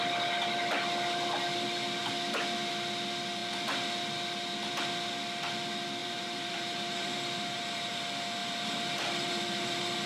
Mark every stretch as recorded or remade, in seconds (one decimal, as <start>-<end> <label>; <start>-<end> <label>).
0.0-6.0 recorded; 6.0-8.0 remade; 8.0-8.4 recorded; 8.4-10.1 remade